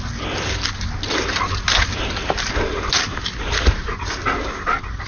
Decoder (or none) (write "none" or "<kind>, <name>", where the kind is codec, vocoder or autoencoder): none